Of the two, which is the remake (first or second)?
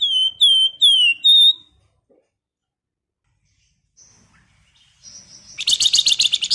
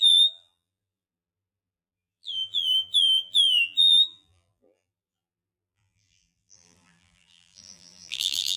second